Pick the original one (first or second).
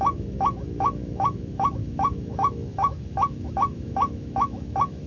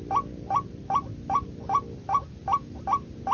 second